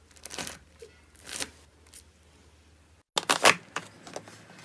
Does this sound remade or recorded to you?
recorded